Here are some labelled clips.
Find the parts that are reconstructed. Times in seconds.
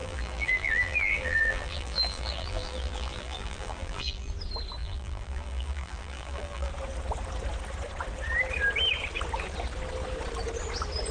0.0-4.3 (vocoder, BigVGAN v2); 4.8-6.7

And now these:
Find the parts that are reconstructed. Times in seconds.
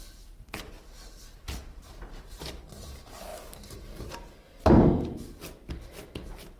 3.3-4.1 (vocoder, BigVGAN v2)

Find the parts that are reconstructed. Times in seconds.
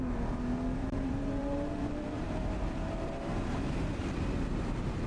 0.8-3.9 (vocoder, BigVGAN v2)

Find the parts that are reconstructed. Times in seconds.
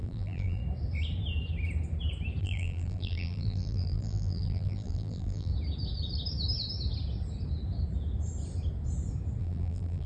0.0-0.6 (vocoder, BigVGAN v2); 2.4-5.5; 9.4-10.1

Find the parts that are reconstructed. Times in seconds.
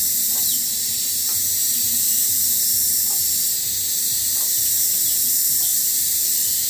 0.0-0.8 (vocoder, BigVGAN v2); 1.6-2.6; 5.7-6.7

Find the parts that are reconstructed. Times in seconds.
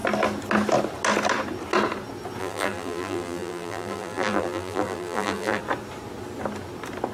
2.4-5.6 (vocoder, BigVGAN v2)